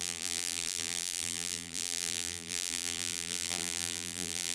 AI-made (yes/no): yes